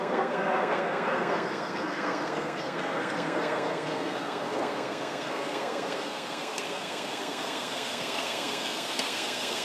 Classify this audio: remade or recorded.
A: remade